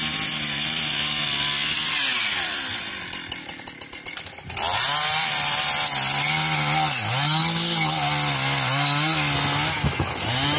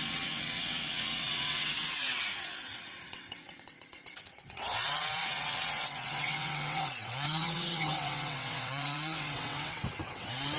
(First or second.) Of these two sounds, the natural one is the first